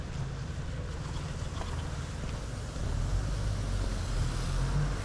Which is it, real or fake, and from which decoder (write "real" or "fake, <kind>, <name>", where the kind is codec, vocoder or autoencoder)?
real